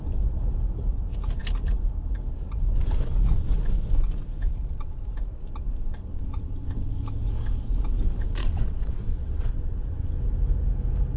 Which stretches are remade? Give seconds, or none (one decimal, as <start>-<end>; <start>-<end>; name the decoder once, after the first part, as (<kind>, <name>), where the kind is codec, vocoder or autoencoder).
6.1-6.9 (vocoder, WaveNeXt); 8.4-10.1